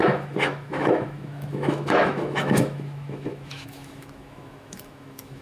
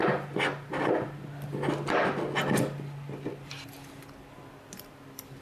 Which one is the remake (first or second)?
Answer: first